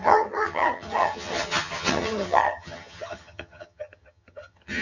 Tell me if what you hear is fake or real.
fake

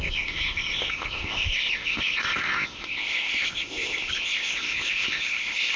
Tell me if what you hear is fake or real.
fake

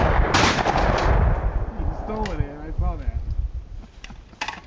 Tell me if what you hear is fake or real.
real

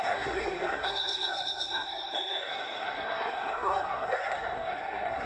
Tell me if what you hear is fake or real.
fake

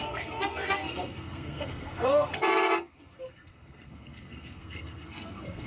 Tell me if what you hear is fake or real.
fake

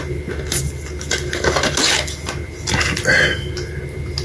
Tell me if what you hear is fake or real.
real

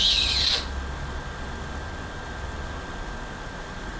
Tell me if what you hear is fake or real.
real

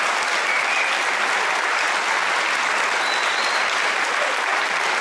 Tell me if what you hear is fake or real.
real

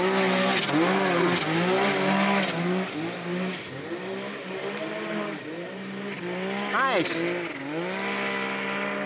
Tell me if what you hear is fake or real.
real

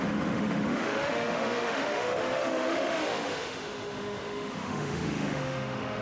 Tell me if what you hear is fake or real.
fake